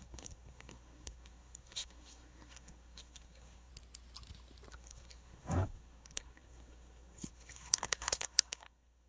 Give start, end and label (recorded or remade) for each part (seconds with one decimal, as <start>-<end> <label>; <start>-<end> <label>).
0.0-3.7 remade; 3.7-4.7 recorded; 4.7-9.1 remade